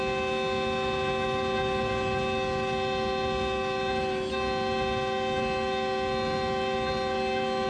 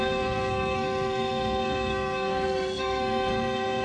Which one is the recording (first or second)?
first